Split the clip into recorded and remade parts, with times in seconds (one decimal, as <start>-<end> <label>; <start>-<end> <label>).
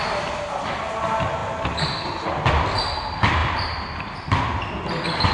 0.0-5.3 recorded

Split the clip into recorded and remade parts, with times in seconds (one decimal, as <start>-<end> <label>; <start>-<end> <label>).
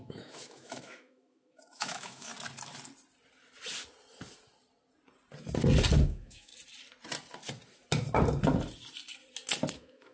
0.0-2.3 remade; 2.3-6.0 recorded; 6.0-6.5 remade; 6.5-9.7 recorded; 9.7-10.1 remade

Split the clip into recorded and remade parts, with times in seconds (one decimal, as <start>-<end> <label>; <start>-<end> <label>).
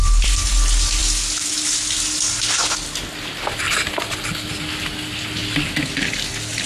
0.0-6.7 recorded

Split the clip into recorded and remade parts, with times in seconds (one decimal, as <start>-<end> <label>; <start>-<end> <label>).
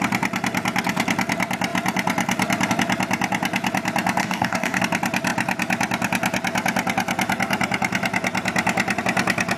0.0-4.2 recorded; 4.2-4.8 remade; 4.8-9.6 recorded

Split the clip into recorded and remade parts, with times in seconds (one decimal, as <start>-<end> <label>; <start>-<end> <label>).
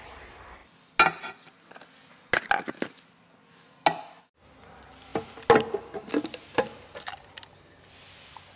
0.0-8.6 recorded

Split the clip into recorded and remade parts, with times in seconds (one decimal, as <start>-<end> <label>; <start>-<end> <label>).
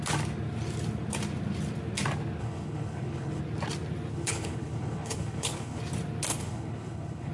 0.0-2.4 recorded; 2.4-3.4 remade; 3.4-4.1 recorded; 4.1-5.8 remade; 5.8-6.3 recorded; 6.3-7.3 remade